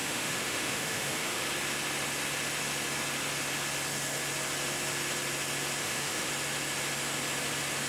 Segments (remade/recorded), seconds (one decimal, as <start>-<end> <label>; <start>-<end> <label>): 0.0-1.4 remade; 1.4-5.8 recorded; 5.8-6.3 remade; 6.3-7.9 recorded